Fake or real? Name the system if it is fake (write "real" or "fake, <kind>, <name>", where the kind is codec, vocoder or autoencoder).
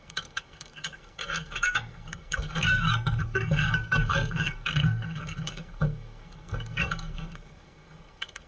fake, codec, SNAC